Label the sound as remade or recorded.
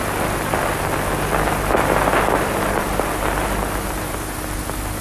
recorded